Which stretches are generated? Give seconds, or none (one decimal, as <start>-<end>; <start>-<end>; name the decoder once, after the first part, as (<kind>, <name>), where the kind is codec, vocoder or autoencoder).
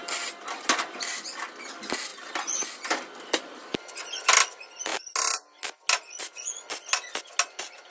none